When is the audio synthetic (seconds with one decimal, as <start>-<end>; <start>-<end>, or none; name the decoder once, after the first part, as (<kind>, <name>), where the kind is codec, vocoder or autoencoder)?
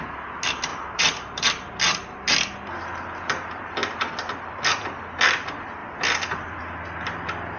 0.7-1.5 (vocoder, BigVGAN v2); 5.8-6.6